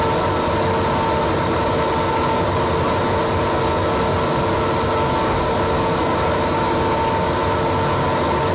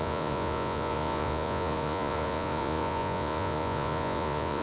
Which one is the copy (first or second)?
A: second